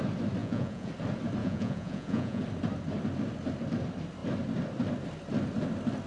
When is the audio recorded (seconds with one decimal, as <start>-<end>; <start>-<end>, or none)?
0.0-0.4; 0.9-1.4; 2.4-6.1